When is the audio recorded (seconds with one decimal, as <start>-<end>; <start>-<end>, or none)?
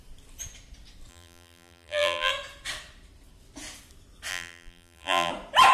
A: 0.0-1.1; 2.3-4.3; 5.3-5.7